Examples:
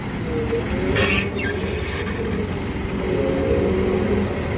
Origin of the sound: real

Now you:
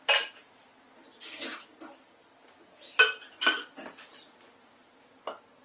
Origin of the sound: real